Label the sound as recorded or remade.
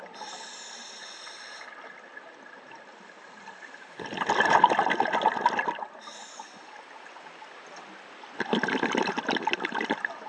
recorded